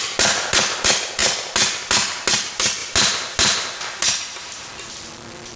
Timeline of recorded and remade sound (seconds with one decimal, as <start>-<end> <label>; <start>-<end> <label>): 0.0-5.6 recorded